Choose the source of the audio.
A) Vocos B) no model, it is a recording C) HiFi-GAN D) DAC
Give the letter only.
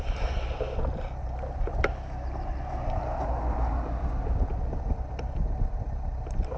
B